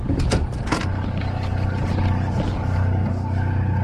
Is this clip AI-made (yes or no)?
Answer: no